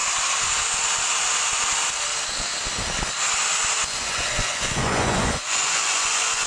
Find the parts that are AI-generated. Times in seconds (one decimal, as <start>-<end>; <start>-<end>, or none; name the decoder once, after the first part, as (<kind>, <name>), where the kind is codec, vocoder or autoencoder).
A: 3.9-6.5 (vocoder, Vocos)